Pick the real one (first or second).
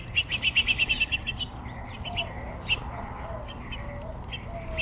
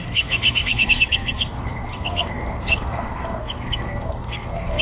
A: first